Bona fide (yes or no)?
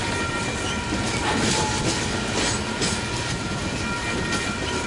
yes